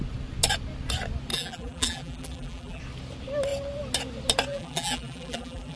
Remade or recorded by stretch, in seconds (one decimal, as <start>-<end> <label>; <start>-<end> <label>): 0.0-1.3 recorded; 1.3-2.8 remade; 2.8-4.5 recorded; 4.5-5.8 remade